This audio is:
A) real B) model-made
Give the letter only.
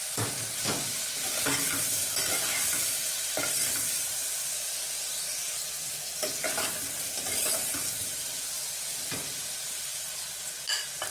A